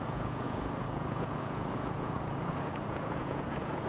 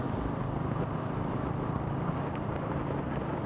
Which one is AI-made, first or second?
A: first